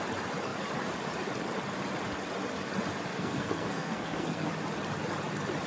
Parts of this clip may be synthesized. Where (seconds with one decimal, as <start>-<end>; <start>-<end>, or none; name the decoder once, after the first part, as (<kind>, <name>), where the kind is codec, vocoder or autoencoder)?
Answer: 3.1-4.5 (codec, SNAC)